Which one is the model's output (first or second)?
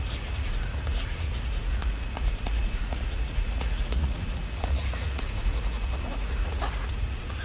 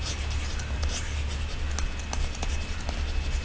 first